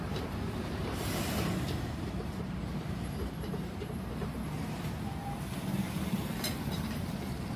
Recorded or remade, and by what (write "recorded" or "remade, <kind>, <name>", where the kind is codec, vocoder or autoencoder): remade, vocoder, BigVGAN v2